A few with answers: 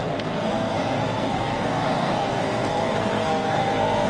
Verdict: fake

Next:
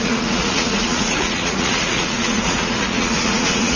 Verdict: fake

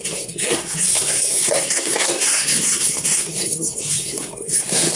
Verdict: fake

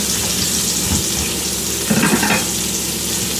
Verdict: real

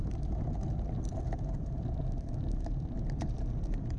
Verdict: fake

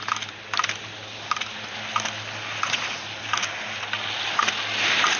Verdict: real